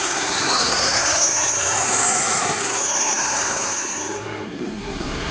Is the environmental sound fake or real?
fake